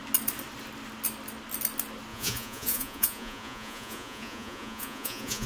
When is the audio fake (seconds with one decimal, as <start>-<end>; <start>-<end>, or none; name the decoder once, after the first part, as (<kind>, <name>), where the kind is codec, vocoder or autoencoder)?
2.1-5.5 (vocoder, Vocos)

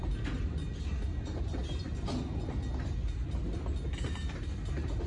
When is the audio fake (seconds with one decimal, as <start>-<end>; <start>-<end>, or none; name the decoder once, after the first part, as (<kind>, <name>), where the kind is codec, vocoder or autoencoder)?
none

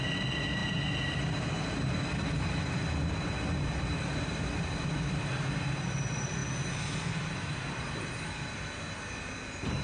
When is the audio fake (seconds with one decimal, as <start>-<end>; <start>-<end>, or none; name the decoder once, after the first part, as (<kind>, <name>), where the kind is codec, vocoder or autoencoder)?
none

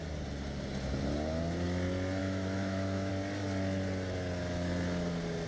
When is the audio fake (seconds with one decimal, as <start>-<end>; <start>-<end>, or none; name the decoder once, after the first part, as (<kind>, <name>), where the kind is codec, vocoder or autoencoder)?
2.2-3.1 (autoencoder, DAC-VAE)

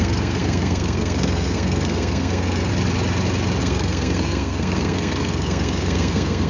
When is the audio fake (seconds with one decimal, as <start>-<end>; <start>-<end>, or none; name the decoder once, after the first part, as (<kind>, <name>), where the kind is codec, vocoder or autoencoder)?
0.0-2.7 (codec, SNAC); 3.6-6.5